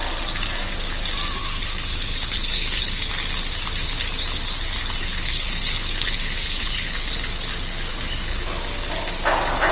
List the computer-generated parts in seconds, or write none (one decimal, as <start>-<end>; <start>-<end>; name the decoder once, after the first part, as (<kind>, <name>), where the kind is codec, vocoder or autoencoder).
1.4-3.1 (codec, HILCodec); 5.0-7.1; 7.9-8.6